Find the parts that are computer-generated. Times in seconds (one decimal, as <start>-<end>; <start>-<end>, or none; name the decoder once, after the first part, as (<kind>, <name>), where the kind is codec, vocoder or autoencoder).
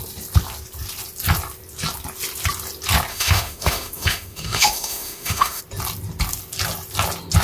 3.1-5.6 (autoencoder, DAC-VAE)